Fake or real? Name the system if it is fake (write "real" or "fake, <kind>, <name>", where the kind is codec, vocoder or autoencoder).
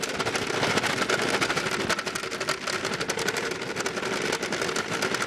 real